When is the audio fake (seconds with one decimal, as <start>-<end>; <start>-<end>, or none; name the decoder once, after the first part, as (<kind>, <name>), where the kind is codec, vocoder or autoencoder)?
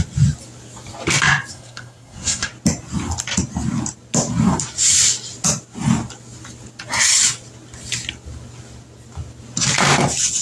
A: 1.5-2.5 (codec, SNAC)